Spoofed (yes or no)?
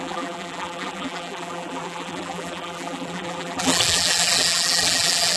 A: yes